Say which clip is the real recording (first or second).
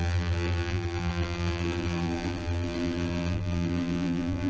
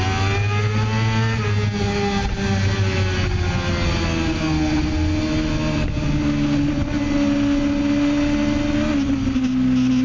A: second